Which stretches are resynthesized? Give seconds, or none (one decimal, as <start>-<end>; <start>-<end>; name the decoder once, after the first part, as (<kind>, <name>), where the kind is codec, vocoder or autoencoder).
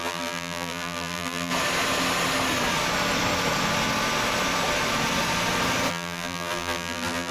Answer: 0.0-1.5 (vocoder, BigVGAN v2); 5.9-7.3